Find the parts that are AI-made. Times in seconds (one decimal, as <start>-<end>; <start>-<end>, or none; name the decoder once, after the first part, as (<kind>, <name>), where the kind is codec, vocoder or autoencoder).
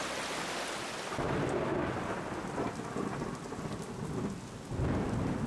none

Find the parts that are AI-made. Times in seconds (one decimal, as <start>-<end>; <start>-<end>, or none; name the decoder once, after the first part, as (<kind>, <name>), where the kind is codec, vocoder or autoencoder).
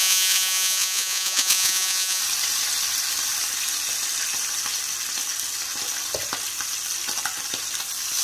0.0-2.2 (vocoder, Vocos)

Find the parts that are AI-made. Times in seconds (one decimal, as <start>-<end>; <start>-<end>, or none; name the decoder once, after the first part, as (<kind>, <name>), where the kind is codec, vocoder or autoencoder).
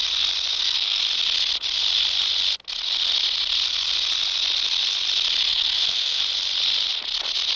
0.5-1.0 (codec, SNAC); 5.5-6.2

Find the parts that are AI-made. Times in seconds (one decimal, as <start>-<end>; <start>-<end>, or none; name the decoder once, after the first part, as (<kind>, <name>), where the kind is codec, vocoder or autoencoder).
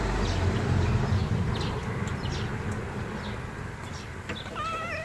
none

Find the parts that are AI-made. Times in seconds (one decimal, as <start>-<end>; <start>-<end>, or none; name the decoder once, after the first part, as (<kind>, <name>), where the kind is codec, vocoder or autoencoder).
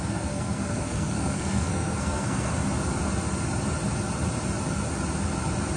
0.0-2.5 (codec, SNAC)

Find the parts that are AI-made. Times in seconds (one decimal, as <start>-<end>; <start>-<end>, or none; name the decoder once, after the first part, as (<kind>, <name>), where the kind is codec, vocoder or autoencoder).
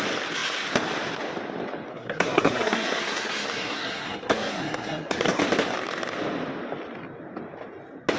1.9-5.4 (codec, SNAC)